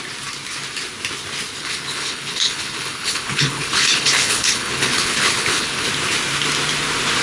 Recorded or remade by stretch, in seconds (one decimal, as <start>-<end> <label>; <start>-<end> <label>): 0.0-1.6 recorded; 1.6-5.9 remade; 5.9-7.2 recorded